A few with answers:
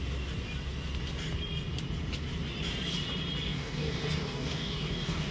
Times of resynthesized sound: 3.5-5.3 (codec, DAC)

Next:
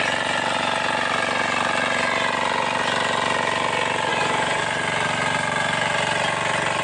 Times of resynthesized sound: 4.1-4.6 (vocoder, Vocos)

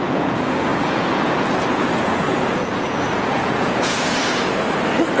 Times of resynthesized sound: 0.0-4.4 (vocoder, Vocos)

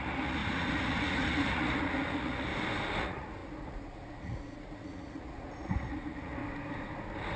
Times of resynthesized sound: 0.0-2.5 (vocoder, Vocos); 3.0-6.4

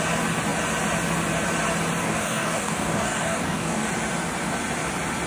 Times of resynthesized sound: 2.0-3.9 (codec, DAC)

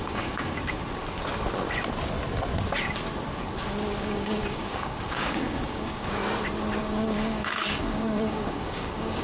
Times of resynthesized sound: 0.0-0.8 (codec, DAC); 4.0-6.2; 6.8-9.2

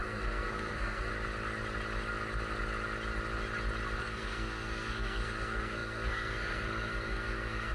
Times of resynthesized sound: 0.0-1.1 (codec, SNAC); 4.0-7.7